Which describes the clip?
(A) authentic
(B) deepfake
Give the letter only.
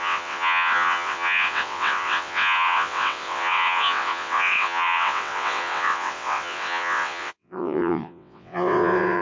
B